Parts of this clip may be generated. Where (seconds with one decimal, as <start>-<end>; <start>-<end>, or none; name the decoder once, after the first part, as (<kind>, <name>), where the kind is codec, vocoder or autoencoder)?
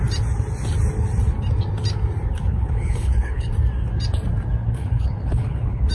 2.5-3.5 (codec, HILCodec); 4.6-5.9